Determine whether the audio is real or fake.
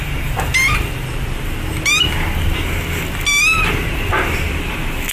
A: real